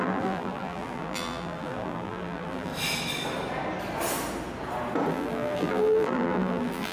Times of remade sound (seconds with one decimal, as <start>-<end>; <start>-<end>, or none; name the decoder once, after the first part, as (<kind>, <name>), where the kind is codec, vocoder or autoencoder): 0.0-2.7 (vocoder, BigVGAN v2); 5.1-6.9